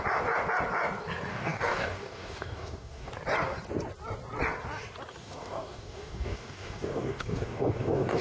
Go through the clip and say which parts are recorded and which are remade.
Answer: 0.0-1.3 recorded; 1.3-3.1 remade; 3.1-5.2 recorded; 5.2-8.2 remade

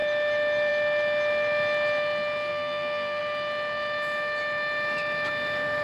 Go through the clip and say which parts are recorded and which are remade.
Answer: 0.0-2.5 recorded; 2.5-3.2 remade; 3.2-5.8 recorded

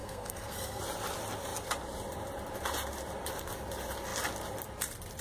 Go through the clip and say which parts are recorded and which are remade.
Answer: 0.0-0.8 remade; 0.8-5.2 recorded

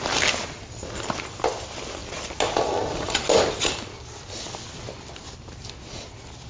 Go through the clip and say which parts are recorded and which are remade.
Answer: 0.0-6.5 recorded